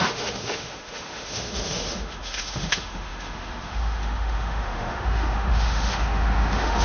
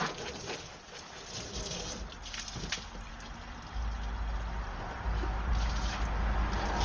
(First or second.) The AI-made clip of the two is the first